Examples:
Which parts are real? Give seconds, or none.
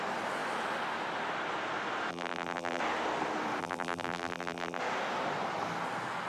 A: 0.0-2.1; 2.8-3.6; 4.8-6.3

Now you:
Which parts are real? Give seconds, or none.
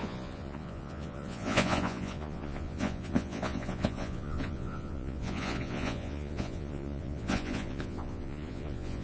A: none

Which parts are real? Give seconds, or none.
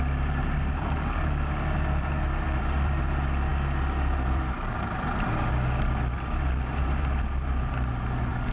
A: 0.0-8.5